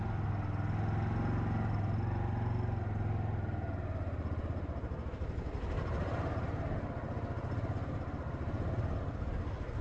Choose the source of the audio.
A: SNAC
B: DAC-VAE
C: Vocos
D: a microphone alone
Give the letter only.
D